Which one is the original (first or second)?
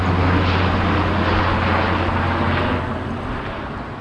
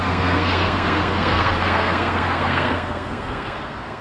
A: first